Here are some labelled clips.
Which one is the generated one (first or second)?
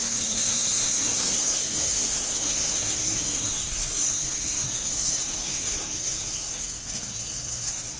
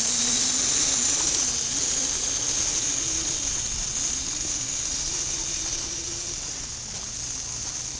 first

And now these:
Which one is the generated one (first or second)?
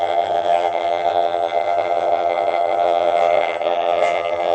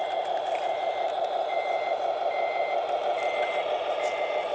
first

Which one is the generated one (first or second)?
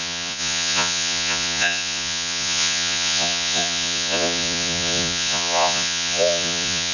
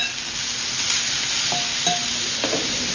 first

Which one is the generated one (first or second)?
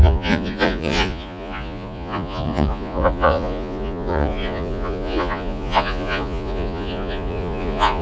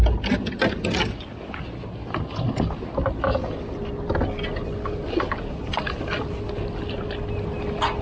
first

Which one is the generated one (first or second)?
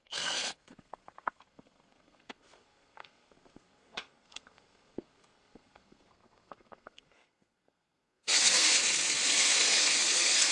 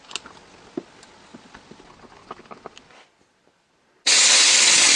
first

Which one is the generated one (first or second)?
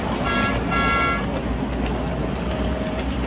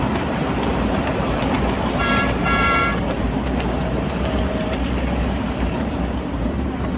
second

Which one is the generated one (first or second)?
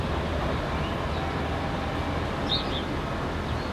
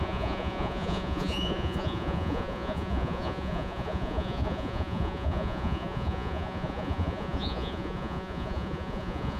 second